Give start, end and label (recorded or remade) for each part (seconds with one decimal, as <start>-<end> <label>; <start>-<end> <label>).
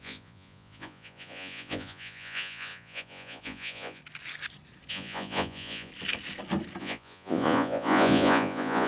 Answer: 0.0-4.0 remade; 4.0-4.9 recorded; 4.9-5.9 remade; 5.9-6.8 recorded; 6.8-8.9 remade